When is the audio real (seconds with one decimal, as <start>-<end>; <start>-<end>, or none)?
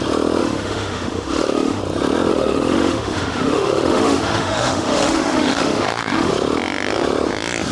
0.0-0.4; 1.8-2.3; 6.3-7.7